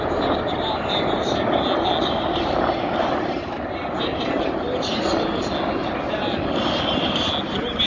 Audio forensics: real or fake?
real